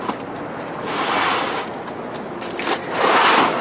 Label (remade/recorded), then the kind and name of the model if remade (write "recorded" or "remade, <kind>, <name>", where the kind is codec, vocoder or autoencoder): recorded